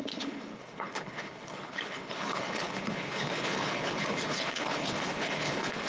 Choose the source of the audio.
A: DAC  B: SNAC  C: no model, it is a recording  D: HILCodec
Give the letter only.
D